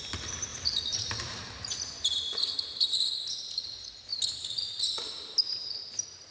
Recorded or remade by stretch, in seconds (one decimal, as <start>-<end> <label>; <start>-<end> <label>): 0.0-0.5 recorded; 0.5-3.1 remade; 3.1-6.3 recorded